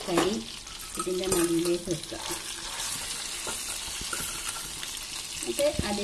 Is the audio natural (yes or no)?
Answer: yes